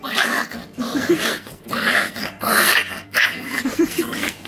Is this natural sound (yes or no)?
no